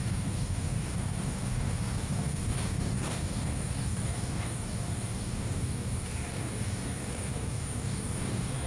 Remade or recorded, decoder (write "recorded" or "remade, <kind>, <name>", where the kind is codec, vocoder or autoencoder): remade, codec, DAC